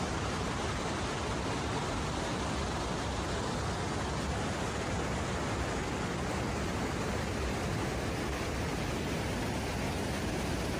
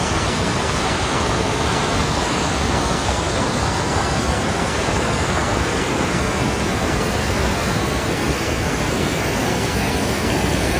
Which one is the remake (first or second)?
second